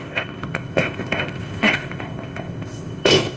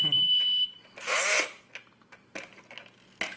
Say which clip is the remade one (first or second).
first